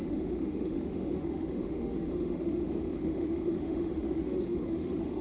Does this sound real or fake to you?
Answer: fake